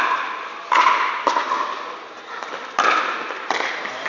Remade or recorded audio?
recorded